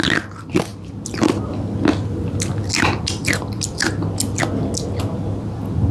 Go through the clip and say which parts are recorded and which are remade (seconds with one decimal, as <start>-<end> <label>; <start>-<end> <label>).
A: 0.0-5.9 recorded